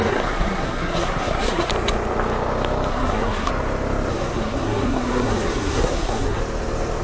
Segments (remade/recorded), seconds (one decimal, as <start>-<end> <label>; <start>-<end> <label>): 0.0-1.7 remade; 1.7-2.9 recorded; 2.9-3.5 remade; 3.5-4.1 recorded; 4.1-6.4 remade; 6.4-7.0 recorded